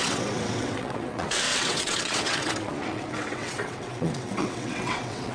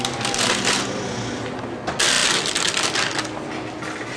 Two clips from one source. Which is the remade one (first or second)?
first